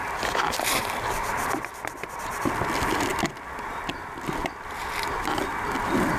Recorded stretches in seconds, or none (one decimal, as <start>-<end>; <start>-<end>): 0.0-6.2